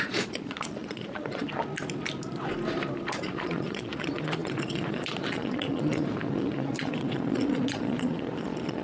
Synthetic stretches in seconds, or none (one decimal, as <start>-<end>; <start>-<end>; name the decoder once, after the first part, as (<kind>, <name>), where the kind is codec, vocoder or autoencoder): 0.0-1.5 (vocoder, Vocos); 3.3-8.8